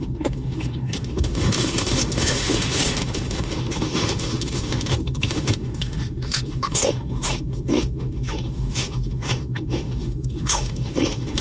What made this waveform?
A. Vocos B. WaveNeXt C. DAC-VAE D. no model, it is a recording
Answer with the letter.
C